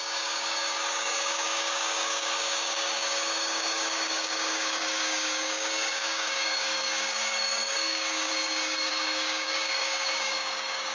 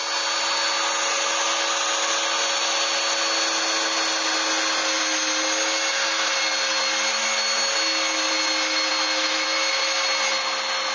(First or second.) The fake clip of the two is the first